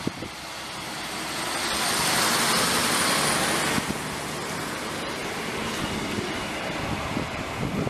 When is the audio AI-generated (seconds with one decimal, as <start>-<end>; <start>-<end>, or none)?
none